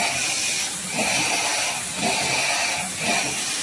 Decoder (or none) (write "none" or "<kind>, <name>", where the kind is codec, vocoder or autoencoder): none